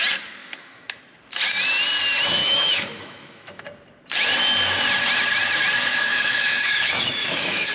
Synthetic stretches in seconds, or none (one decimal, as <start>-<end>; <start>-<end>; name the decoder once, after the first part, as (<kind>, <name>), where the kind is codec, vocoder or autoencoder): 0.4-1.0 (autoencoder, DAC-VAE); 2.4-3.6; 5.9-7.7